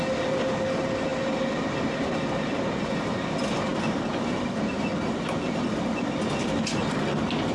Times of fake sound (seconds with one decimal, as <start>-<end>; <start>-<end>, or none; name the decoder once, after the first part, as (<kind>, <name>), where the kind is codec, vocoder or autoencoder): none

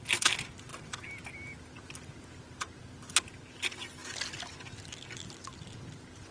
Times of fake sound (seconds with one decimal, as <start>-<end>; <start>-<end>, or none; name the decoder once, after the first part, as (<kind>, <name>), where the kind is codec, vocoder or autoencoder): none

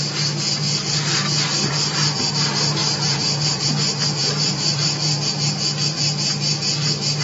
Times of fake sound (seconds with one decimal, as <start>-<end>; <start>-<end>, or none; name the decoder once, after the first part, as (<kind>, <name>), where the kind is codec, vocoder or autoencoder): 1.6-2.3 (vocoder, BigVGAN v2); 2.8-3.7; 4.2-5.1

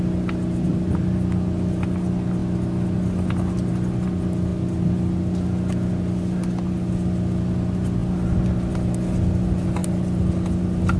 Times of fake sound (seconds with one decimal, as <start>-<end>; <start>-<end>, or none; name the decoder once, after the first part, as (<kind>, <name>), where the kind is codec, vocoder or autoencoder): 4.5-5.9 (vocoder, BigVGAN v2); 9.8-10.6

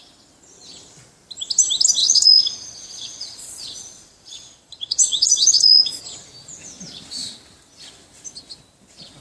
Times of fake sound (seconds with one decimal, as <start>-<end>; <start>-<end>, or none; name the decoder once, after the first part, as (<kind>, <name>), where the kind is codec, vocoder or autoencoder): 2.0-6.0 (vocoder, Vocos)

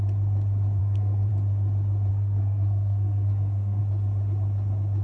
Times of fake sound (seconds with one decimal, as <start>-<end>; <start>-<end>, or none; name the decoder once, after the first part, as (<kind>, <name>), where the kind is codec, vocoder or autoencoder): 0.8-1.3 (codec, SNAC); 2.1-3.8